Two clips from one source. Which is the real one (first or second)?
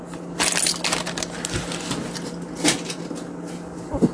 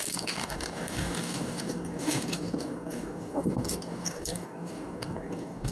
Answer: first